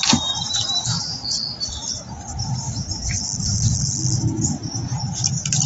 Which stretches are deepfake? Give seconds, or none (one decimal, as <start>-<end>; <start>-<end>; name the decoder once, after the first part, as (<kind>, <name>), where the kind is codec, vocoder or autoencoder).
none